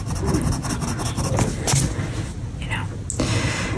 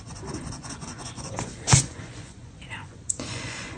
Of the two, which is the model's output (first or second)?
second